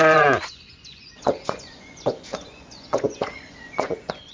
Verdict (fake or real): fake